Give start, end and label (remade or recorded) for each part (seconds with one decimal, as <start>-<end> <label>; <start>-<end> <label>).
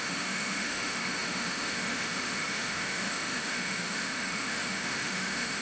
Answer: 0.0-5.6 remade